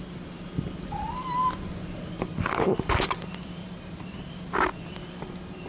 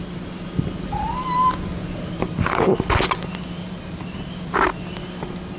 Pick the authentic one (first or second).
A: second